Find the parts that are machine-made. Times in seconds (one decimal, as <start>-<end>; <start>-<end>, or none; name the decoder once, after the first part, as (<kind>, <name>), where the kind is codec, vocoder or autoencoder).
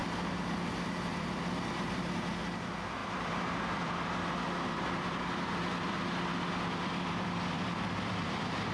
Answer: 0.7-8.7 (vocoder, BigVGAN v2)